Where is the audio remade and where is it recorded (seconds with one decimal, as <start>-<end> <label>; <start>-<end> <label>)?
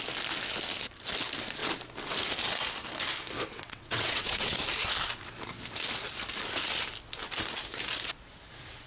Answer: 0.0-3.5 recorded; 3.5-4.5 remade; 4.5-8.9 recorded